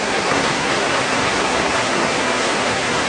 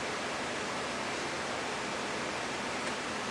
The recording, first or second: second